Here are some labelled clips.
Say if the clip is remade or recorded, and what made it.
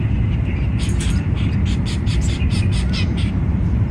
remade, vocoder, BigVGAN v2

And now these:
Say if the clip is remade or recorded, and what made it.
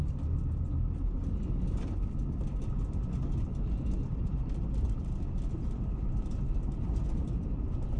recorded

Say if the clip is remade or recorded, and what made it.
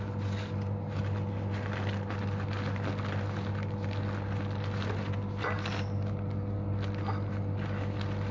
recorded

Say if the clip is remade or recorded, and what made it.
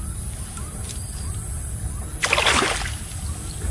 recorded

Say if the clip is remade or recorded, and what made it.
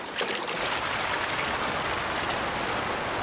recorded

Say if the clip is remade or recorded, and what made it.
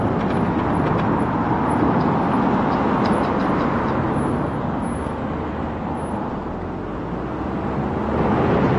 recorded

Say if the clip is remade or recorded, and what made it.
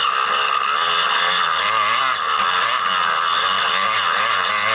recorded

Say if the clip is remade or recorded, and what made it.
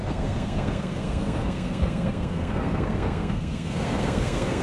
remade, codec, SNAC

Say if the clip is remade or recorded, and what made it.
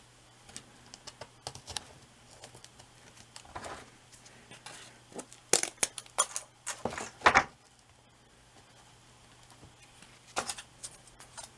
recorded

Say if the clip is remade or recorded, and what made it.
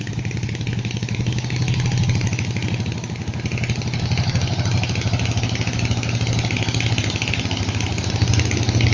recorded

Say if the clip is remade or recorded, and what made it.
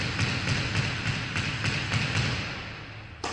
recorded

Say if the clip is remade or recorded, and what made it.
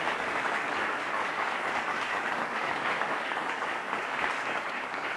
remade, codec, DAC